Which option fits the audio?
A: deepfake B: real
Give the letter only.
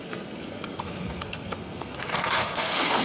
A